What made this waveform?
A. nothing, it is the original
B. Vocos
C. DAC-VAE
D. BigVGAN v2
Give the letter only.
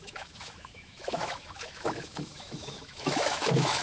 C